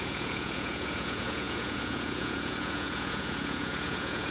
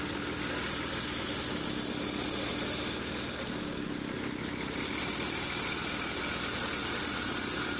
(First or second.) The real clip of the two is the second